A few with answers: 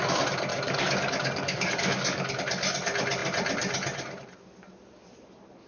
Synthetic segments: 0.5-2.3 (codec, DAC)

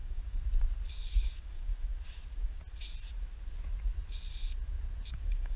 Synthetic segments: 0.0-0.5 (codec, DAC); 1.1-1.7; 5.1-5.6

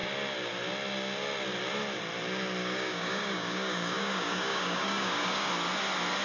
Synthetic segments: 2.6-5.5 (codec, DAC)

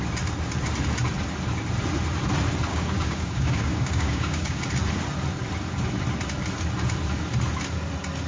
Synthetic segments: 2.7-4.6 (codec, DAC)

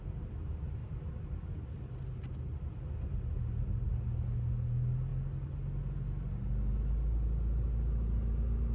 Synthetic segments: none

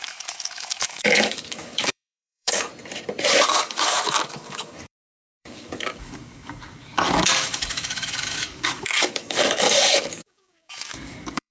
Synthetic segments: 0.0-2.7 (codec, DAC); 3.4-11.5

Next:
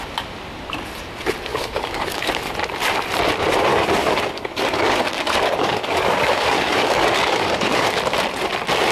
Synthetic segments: 1.5-2.3 (codec, DAC); 3.7-8.0